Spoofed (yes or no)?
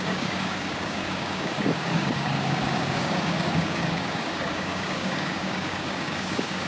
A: yes